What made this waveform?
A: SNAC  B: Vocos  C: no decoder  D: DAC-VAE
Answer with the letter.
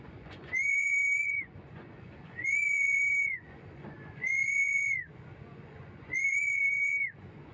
B